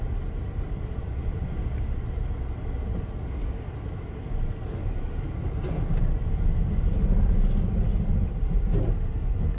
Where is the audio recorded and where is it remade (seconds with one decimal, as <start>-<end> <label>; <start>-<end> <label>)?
0.0-9.6 recorded